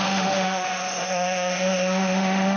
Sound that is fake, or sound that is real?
fake